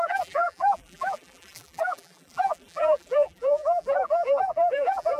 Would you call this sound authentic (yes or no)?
no